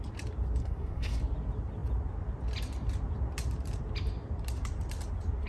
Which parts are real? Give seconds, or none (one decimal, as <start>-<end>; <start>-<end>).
0.0-0.6; 1.2-5.5